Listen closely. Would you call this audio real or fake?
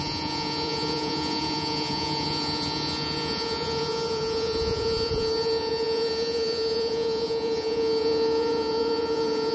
fake